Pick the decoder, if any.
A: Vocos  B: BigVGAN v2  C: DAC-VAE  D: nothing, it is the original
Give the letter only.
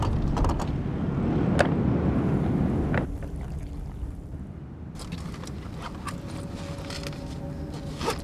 D